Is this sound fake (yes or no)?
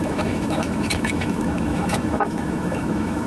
yes